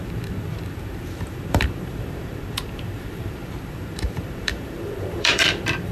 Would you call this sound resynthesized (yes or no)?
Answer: yes